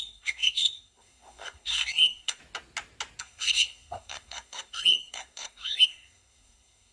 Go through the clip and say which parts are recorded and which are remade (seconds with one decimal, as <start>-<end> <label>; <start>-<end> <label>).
0.0-2.4 remade; 2.4-3.2 recorded; 3.2-6.9 remade